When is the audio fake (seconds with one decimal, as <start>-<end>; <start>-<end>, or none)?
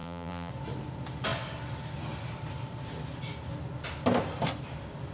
0.0-0.5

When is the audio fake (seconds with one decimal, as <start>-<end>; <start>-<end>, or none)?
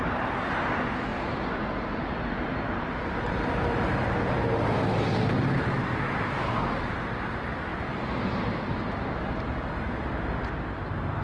1.1-3.4; 7.7-9.2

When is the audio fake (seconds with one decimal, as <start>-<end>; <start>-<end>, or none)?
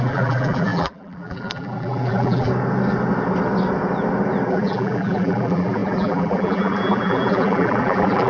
0.0-2.5; 4.5-8.3